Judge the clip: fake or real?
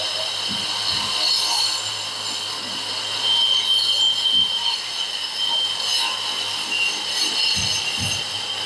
real